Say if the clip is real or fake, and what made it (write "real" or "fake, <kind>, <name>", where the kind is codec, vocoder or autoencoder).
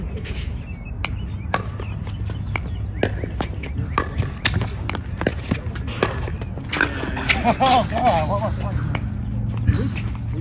real